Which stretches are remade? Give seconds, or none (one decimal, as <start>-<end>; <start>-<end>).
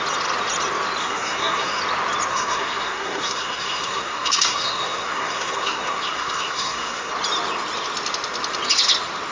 1.0-1.8; 2.3-7.1